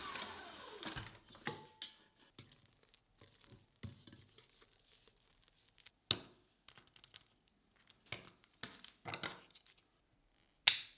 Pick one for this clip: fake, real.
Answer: real